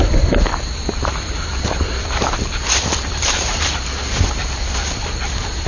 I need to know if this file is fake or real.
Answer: fake